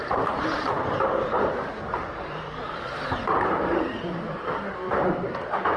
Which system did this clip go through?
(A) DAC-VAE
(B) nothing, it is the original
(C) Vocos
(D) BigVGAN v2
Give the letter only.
D